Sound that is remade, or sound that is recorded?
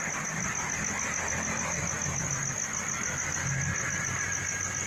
recorded